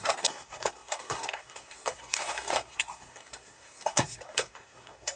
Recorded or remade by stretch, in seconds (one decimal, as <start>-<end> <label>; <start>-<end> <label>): 0.0-5.2 remade